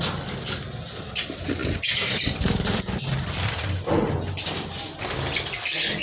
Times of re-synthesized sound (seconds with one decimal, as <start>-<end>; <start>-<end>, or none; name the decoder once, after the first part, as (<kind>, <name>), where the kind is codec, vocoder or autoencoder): none